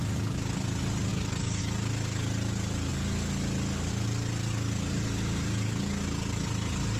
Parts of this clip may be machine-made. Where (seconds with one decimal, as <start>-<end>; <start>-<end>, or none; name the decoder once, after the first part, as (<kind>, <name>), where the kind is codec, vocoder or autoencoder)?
1.1-1.6 (codec, DAC)